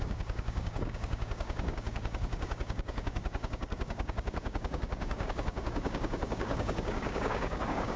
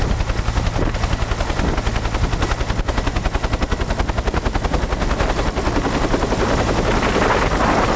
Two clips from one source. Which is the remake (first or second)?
first